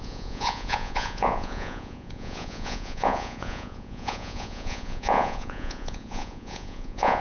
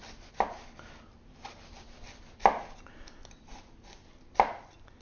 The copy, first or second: first